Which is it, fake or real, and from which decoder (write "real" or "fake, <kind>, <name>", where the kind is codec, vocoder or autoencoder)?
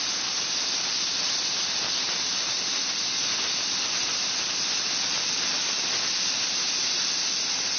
real